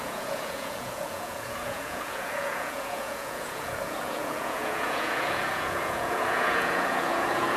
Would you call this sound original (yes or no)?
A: no